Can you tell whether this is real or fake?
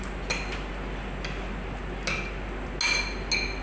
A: real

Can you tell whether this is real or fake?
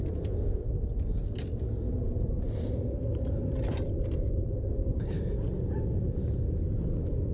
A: real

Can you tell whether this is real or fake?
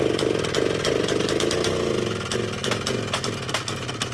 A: real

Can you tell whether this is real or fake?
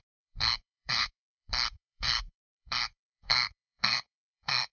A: fake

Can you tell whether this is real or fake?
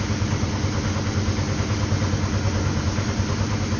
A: real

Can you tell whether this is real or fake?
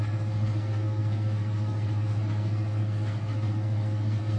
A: fake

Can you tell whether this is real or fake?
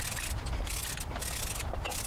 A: real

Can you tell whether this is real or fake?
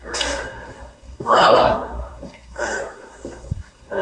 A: fake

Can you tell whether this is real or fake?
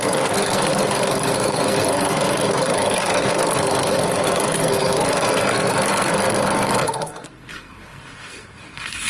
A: fake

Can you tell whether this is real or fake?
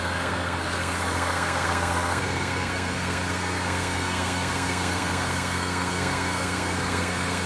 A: fake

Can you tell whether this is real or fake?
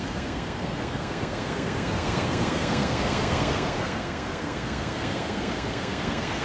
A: fake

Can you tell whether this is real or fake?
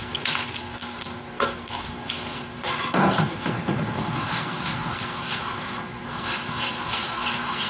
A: fake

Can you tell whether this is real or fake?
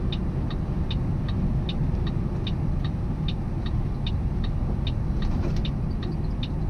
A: real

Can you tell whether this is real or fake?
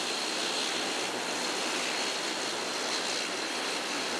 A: real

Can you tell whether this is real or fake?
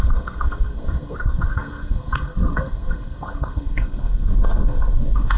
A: fake